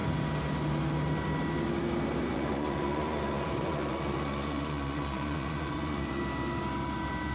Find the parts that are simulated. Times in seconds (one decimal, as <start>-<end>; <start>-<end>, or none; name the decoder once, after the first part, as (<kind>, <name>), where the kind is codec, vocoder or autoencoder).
2.3-6.2 (vocoder, Vocos)

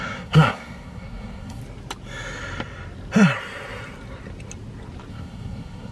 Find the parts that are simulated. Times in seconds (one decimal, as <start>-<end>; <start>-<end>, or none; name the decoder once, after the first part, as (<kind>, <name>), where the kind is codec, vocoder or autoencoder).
0.0-1.6 (codec, SNAC); 5.1-5.9